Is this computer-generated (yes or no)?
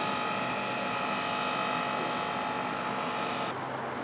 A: no